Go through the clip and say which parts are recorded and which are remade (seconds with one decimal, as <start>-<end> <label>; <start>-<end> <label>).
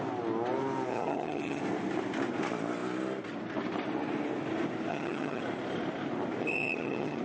0.0-0.9 recorded; 0.9-1.6 remade; 1.6-4.9 recorded; 4.9-5.4 remade; 5.4-6.4 recorded; 6.4-7.2 remade